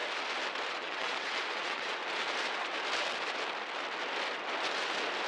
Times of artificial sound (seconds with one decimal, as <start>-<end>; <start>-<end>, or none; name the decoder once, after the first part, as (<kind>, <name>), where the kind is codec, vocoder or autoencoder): 0.7-2.0 (vocoder, WaveNeXt)